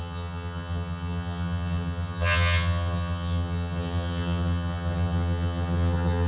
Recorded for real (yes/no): no